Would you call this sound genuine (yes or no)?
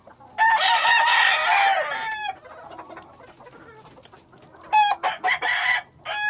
yes